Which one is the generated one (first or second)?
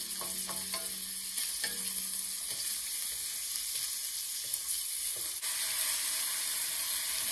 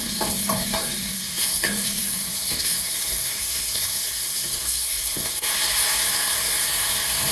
second